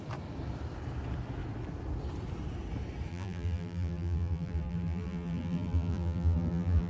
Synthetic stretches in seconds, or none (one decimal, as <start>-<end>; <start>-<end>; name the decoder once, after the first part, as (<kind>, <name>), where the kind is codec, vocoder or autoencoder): 3.1-6.9 (vocoder, BigVGAN v2)